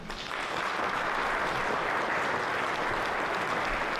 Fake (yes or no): no